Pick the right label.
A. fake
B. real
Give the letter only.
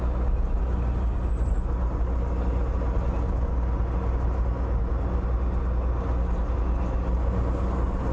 B